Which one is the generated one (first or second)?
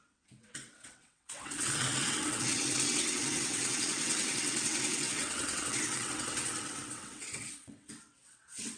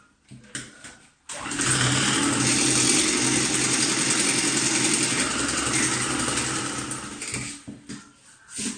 first